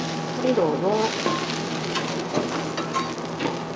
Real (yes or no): no